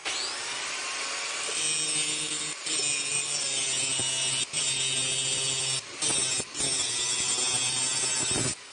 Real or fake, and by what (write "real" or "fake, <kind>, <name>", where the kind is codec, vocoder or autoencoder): real